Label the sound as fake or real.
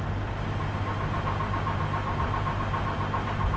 real